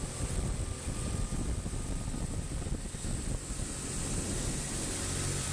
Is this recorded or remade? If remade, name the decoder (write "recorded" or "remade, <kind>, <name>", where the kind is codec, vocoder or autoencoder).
recorded